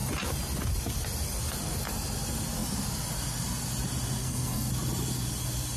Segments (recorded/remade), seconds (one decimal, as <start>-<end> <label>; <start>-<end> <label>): 0.0-4.2 recorded; 4.2-4.7 remade; 4.7-5.8 recorded